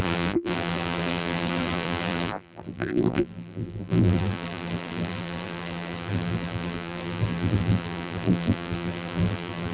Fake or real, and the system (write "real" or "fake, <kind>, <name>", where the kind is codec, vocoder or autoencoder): fake, vocoder, BigVGAN v2